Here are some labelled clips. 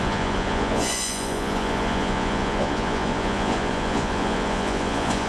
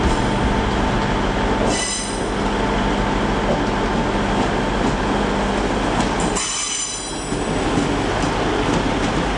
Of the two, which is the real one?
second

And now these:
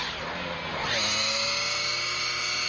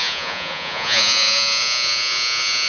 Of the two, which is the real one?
first